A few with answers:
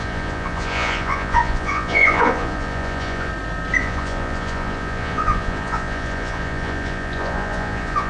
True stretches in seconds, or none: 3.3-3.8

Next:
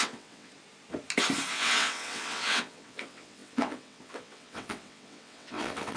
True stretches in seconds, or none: 0.5-1.5

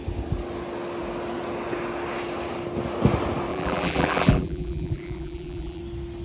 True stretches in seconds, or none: 0.0-3.5; 5.8-6.2

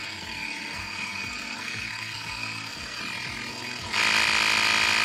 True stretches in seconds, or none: 3.0-3.5; 4.0-5.0

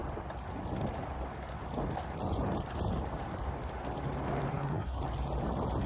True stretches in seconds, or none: 0.0-4.5; 5.0-5.9

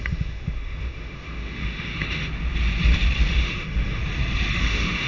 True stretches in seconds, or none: 2.3-3.3; 4.0-4.6

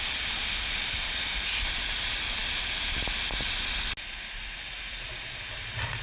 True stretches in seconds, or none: 0.0-6.0

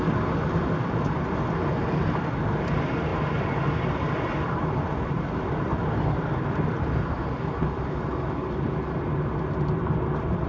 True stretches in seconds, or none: 0.0-10.5